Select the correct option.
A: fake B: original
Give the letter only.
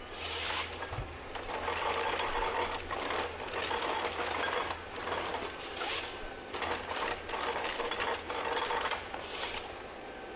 B